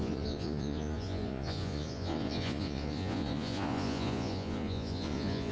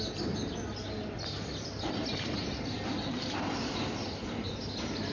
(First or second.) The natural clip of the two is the second